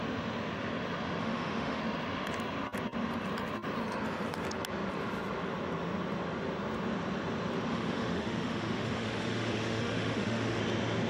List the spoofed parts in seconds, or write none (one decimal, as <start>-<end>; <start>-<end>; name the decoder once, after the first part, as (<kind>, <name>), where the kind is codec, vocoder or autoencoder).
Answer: 1.2-1.8 (autoencoder, DAC-VAE); 7.7-10.6